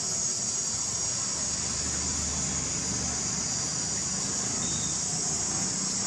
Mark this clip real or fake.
real